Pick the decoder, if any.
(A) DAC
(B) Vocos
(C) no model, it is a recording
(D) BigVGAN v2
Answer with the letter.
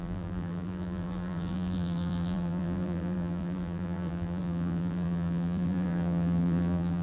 D